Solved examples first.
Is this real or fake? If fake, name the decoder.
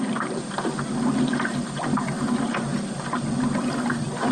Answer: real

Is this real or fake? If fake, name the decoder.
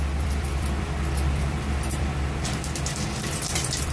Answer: fake, vocoder, BigVGAN v2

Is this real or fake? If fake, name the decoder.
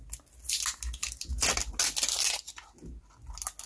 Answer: real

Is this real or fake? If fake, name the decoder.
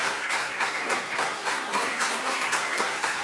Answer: fake, codec, SNAC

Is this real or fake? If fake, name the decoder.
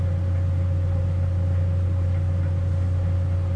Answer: real